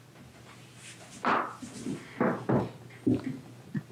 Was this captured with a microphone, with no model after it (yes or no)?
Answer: yes